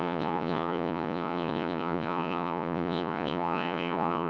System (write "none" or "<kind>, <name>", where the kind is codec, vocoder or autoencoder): vocoder, Vocos